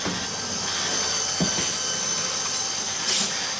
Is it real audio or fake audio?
real